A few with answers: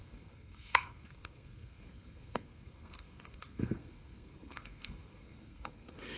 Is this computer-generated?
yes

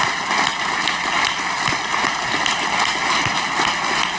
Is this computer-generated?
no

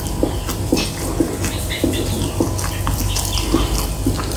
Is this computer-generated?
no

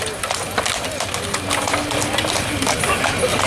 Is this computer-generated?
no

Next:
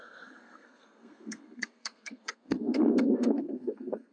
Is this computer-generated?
yes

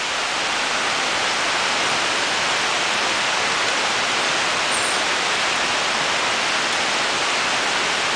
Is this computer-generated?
no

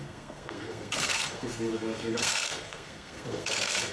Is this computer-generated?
yes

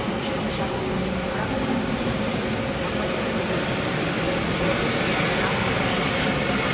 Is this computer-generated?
no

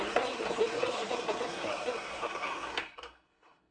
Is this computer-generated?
yes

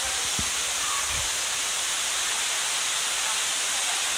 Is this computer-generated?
no